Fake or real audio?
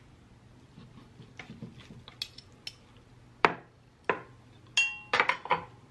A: real